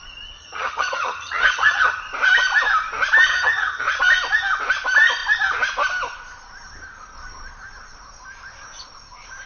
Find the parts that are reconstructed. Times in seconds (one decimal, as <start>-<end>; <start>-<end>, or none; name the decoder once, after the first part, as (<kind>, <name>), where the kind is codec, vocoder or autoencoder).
0.4-2.0 (vocoder, HiFi-GAN); 3.3-4.0

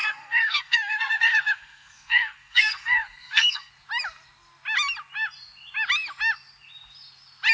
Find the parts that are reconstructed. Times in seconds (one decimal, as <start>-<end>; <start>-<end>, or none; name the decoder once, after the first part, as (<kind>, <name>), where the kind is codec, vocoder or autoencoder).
0.0-3.7 (codec, SNAC)

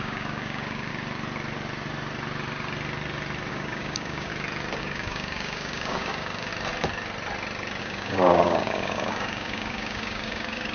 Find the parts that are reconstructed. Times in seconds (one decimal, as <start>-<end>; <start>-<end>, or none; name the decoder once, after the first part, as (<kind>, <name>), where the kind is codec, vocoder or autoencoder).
0.0-0.9 (codec, DAC); 3.5-4.3; 4.8-6.5; 7.8-10.7